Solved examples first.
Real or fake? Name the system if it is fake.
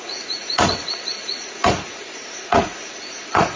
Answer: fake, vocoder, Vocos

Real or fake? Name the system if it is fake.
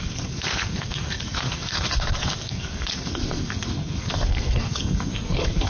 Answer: fake, codec, SNAC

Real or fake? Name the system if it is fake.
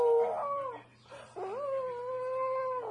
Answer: real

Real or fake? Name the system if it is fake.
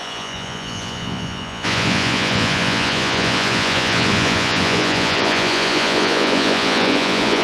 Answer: fake, vocoder, Vocos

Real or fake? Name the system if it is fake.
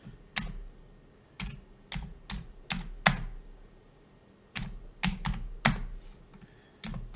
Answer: real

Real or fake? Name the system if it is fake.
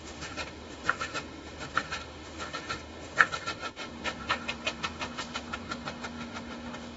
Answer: fake, autoencoder, DAC-VAE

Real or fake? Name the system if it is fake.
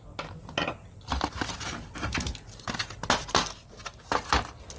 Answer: real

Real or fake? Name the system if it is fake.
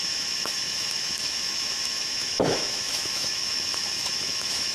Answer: fake, autoencoder, DAC-VAE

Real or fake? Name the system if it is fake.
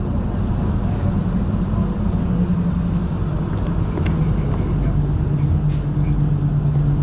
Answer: real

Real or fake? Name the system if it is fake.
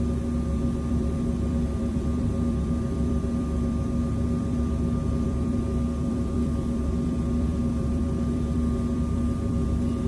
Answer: fake, vocoder, BigVGAN v2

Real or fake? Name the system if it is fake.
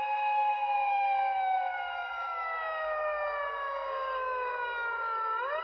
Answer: fake, codec, DAC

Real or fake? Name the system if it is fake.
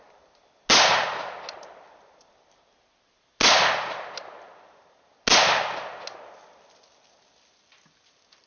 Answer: real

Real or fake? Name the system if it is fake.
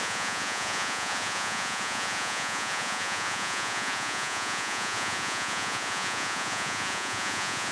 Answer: fake, vocoder, Vocos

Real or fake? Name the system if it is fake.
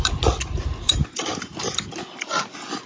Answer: real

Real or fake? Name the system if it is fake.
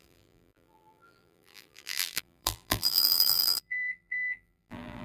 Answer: fake, vocoder, BigVGAN v2